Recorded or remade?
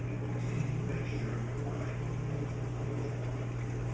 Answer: recorded